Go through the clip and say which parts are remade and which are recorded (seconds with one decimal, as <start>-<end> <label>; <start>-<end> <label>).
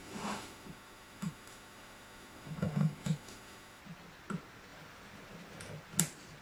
0.0-3.8 remade; 3.8-6.4 recorded